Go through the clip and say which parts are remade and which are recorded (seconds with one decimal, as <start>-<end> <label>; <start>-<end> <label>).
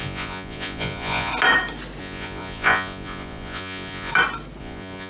0.0-1.3 remade; 1.3-2.0 recorded; 2.0-4.1 remade; 4.1-4.6 recorded; 4.6-5.1 remade